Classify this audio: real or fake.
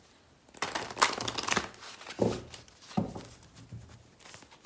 real